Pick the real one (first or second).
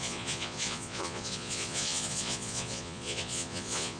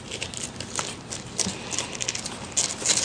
second